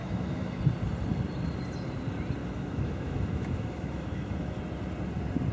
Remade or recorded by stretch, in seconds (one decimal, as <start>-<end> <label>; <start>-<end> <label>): 0.0-0.6 remade; 0.6-2.4 recorded; 2.4-4.6 remade; 4.6-5.5 recorded